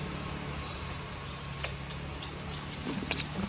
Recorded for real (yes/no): yes